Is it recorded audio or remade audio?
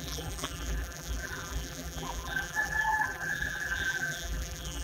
remade